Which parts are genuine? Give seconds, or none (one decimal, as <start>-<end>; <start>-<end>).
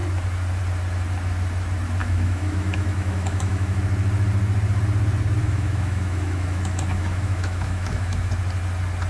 0.0-2.0; 3.8-5.4; 8.3-9.1